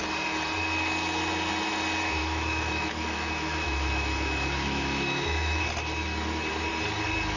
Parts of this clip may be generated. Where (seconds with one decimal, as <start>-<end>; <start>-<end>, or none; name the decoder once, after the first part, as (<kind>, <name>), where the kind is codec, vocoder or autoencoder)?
2.2-5.6 (autoencoder, DAC-VAE)